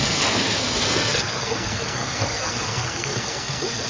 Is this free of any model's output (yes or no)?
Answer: no